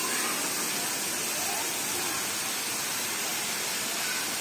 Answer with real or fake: real